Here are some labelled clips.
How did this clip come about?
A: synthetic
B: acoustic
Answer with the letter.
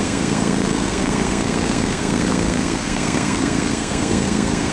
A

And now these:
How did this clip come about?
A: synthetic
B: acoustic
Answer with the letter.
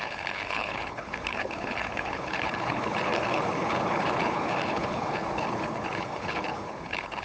A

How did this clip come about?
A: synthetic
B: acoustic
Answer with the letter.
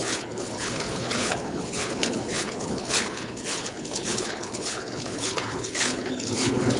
A